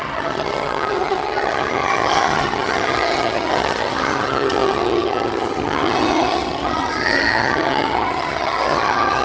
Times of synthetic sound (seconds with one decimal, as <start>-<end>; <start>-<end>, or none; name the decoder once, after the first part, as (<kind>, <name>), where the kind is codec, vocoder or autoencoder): 0.0-9.2 (vocoder, HiFi-GAN)